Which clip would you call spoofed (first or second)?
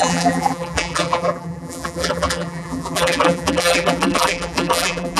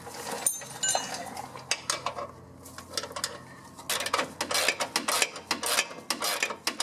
first